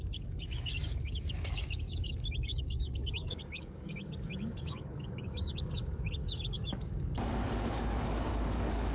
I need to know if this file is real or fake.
fake